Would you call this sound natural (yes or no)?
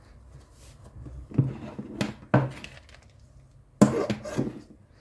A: yes